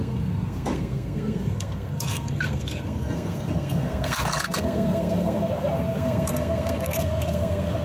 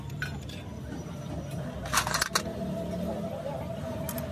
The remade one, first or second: first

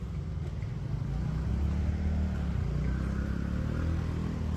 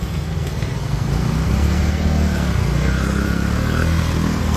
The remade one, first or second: second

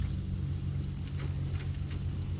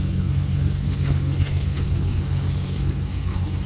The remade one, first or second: second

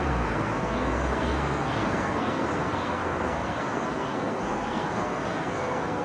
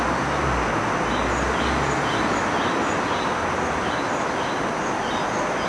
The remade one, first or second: first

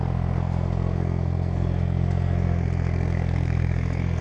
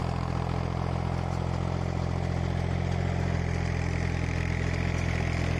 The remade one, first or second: first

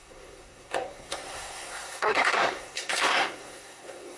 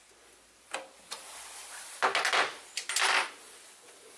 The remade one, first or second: first